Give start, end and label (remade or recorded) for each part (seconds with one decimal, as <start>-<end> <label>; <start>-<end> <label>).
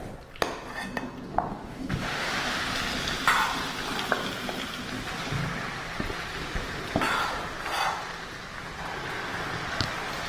0.0-1.3 recorded; 1.3-2.3 remade; 2.3-10.3 recorded